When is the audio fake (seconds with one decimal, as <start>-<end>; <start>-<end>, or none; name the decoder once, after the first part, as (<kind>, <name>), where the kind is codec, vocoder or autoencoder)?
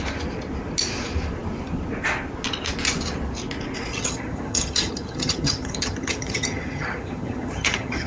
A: 3.9-8.1 (vocoder, HiFi-GAN)